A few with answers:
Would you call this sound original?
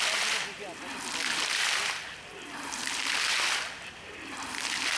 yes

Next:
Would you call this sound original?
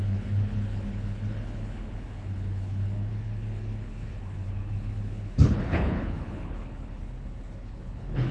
no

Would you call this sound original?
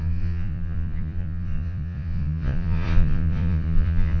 no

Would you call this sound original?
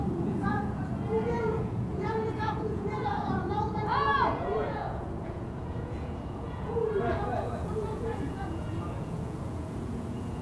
no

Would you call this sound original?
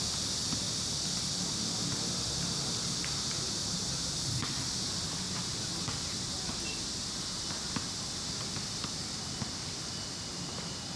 yes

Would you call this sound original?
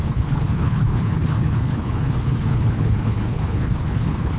no